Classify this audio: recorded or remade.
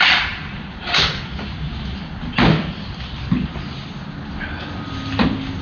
recorded